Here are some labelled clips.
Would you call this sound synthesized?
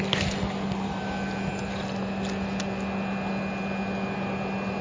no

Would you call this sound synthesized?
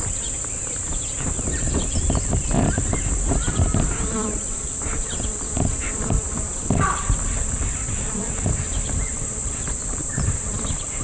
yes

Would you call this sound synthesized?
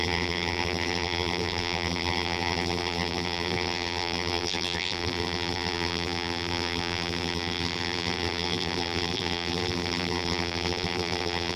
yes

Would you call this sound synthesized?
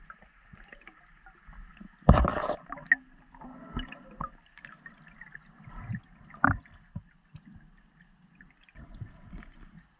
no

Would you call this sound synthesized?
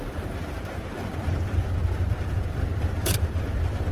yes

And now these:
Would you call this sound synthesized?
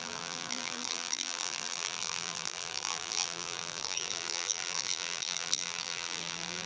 yes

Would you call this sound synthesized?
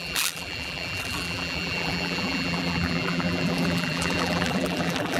yes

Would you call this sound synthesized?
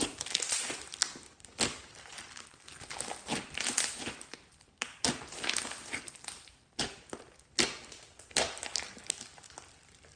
no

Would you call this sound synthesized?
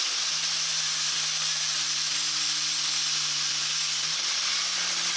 no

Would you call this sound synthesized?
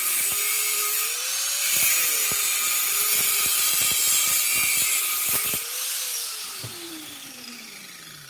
yes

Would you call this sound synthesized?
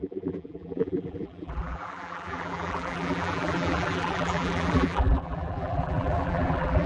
yes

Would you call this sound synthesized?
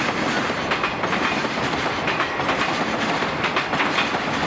yes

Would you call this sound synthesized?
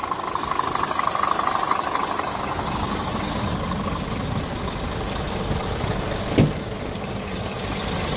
no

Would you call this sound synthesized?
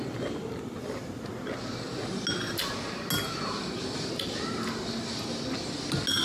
no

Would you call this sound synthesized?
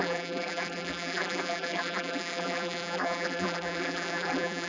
yes